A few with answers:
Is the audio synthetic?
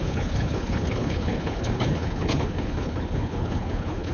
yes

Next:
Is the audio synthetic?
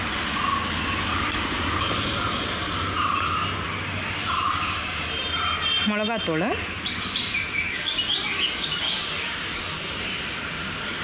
no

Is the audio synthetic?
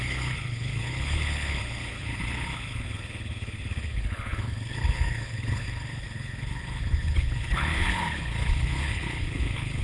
yes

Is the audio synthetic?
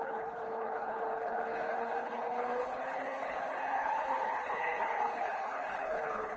yes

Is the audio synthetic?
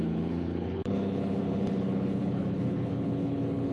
yes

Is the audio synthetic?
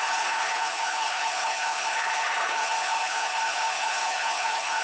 yes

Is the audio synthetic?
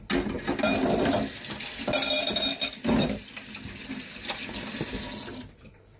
no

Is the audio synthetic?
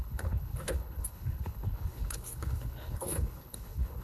yes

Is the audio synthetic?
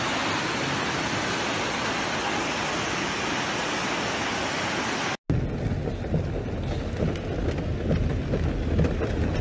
no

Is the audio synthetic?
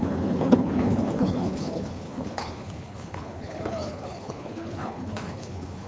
yes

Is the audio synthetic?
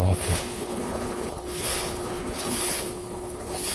yes